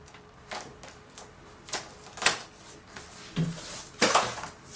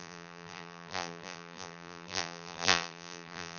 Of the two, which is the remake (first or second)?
second